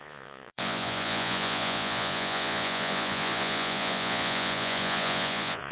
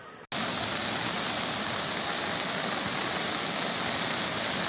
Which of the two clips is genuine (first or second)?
second